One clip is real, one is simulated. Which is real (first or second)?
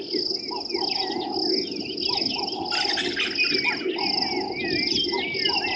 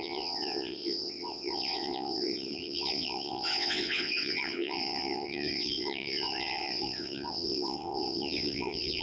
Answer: first